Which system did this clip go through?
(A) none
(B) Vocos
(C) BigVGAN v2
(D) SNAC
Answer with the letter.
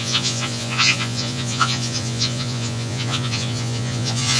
B